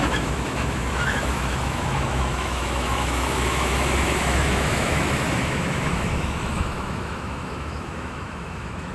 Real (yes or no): no